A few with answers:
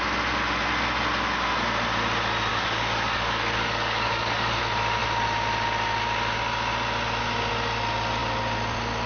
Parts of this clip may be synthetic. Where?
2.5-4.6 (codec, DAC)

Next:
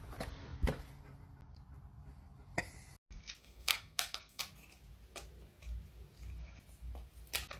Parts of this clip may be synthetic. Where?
3.4-4.4 (codec, SNAC)